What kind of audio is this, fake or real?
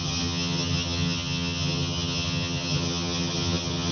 fake